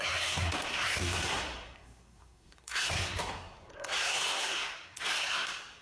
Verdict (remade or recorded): remade